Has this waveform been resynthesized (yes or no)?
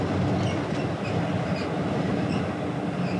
no